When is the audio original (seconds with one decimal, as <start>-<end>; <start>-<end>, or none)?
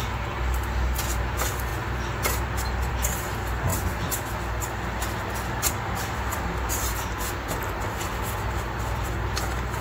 0.0-9.8